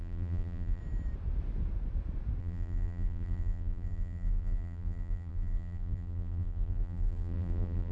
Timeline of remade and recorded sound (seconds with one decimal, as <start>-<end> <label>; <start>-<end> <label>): 0.0-0.8 remade; 0.8-2.4 recorded; 2.4-7.9 remade